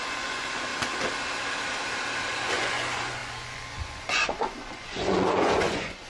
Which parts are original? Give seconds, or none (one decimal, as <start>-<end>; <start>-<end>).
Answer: 0.7-2.3